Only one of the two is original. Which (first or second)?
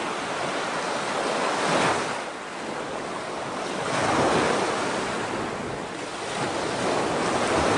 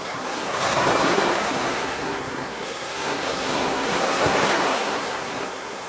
first